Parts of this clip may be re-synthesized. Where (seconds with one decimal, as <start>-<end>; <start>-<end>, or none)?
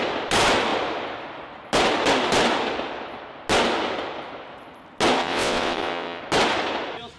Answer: 5.2-6.2